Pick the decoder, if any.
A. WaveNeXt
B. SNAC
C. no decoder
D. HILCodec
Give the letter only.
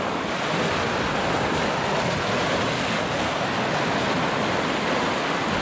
C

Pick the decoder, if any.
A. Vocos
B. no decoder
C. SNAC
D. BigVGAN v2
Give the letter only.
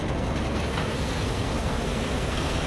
C